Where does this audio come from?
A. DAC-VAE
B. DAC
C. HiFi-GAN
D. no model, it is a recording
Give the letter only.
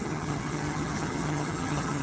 C